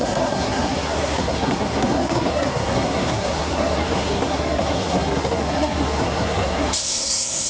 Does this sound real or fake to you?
fake